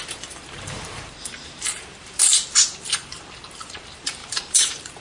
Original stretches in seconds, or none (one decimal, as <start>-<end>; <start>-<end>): 2.3-2.8